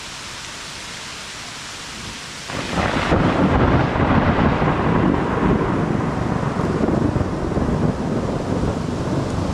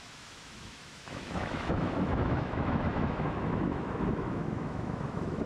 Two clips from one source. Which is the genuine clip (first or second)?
first